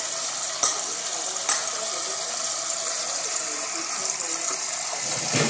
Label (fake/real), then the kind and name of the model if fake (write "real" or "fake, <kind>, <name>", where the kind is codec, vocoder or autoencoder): real